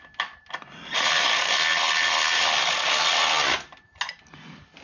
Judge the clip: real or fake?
real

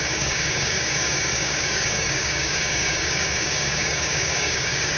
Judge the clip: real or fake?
fake